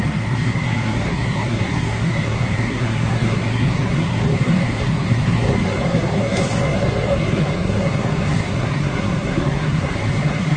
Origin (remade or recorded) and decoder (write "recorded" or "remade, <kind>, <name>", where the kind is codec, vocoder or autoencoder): remade, codec, SNAC